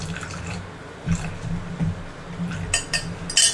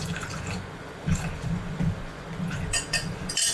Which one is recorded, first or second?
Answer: first